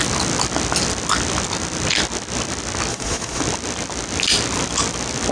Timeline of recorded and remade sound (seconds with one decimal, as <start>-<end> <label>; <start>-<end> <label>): 0.0-2.9 recorded; 2.9-3.4 remade; 3.4-5.3 recorded